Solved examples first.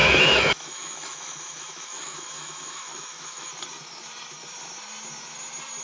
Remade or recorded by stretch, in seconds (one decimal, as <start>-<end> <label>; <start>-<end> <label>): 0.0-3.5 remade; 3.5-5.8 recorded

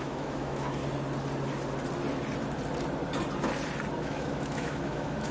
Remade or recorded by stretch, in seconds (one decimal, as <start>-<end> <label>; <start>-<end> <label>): 0.0-0.8 remade; 0.8-4.0 recorded; 4.0-5.3 remade

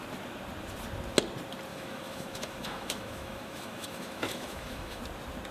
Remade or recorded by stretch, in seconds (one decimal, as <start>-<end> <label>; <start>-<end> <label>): 0.0-1.7 recorded; 1.7-5.0 remade; 5.0-5.5 recorded